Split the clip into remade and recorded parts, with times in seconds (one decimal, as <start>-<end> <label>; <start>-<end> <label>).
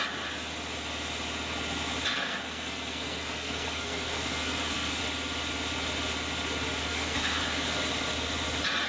0.0-2.1 recorded; 2.1-5.0 remade; 5.0-6.8 recorded; 6.8-7.4 remade; 7.4-8.9 recorded